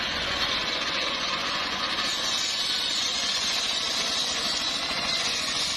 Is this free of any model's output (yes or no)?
no